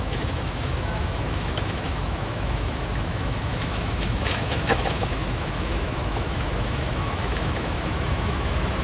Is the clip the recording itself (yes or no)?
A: no